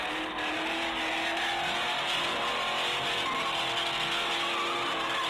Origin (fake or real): real